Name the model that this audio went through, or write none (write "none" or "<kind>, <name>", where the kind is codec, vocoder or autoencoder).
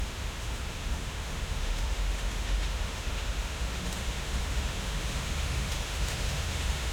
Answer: autoencoder, DAC-VAE